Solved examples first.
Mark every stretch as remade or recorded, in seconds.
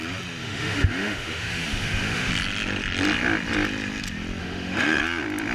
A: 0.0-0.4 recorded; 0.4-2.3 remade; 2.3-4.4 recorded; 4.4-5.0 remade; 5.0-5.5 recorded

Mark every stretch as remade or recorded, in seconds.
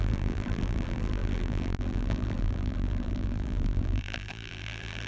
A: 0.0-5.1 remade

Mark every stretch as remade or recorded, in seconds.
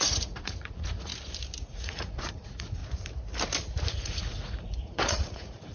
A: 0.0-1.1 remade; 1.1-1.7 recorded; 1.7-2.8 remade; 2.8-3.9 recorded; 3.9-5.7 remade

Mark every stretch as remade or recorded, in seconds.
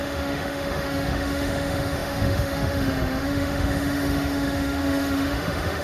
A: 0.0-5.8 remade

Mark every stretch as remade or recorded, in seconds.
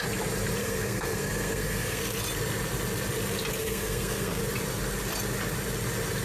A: 0.0-0.6 recorded; 0.6-2.0 remade; 2.0-3.6 recorded; 3.6-4.4 remade; 4.4-6.2 recorded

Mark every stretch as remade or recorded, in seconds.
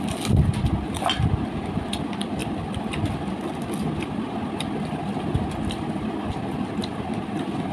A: 0.0-7.7 recorded